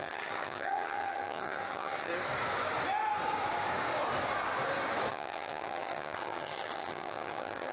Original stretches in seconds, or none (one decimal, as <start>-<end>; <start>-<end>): 2.1-5.1